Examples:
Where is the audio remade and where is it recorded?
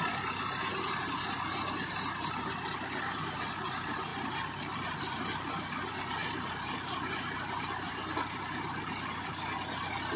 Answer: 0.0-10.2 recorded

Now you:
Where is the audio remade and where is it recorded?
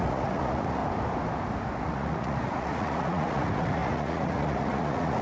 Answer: 0.0-0.8 remade; 0.8-1.8 recorded; 1.8-5.2 remade